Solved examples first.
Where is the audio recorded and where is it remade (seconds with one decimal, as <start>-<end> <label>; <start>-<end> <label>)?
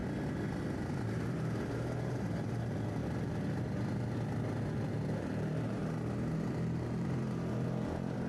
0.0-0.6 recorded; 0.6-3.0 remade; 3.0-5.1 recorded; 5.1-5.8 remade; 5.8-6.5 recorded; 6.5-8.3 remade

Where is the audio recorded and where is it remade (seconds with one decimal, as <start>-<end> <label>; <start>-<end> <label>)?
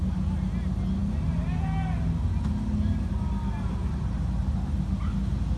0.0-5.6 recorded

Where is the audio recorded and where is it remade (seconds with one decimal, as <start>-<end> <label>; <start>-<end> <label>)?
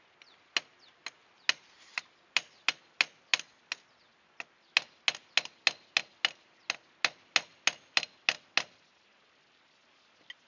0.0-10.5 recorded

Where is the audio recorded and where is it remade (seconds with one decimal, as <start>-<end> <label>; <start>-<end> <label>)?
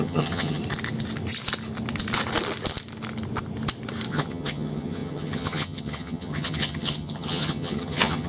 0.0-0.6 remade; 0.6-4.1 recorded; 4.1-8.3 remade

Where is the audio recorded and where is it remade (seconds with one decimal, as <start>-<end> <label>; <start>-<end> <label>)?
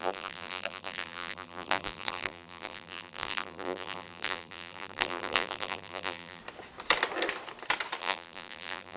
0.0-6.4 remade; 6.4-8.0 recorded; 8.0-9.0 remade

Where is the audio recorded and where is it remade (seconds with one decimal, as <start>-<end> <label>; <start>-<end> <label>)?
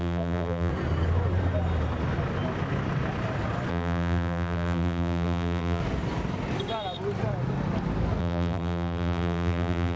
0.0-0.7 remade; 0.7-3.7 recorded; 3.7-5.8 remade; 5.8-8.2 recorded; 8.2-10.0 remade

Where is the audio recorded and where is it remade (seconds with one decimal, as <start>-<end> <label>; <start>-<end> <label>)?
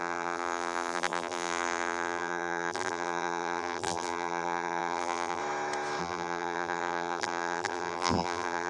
0.0-5.4 remade; 5.4-6.0 recorded; 6.0-8.7 remade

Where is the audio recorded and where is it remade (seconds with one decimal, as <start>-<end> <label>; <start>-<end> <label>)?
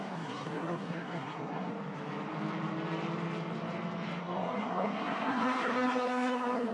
0.0-1.7 remade; 1.7-4.2 recorded; 4.2-6.7 remade